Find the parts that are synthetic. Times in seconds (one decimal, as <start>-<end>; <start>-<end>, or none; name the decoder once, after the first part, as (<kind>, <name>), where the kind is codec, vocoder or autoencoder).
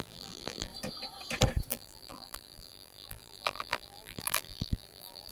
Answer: 0.0-0.7 (vocoder, BigVGAN v2); 1.7-5.3